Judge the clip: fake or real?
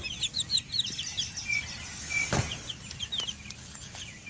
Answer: real